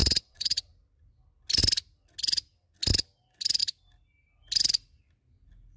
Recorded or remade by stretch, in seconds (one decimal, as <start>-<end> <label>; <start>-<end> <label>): 0.0-0.6 remade; 0.6-5.8 recorded